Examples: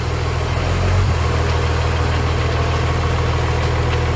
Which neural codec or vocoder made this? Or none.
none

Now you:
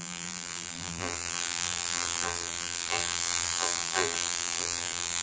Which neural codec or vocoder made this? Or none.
vocoder, BigVGAN v2